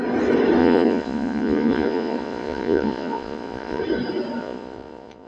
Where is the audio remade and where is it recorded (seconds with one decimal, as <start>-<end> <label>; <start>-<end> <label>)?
0.0-0.6 recorded; 0.6-3.8 remade; 3.8-4.4 recorded; 4.4-5.3 remade